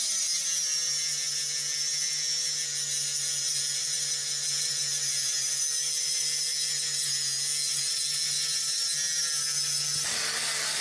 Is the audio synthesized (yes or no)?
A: no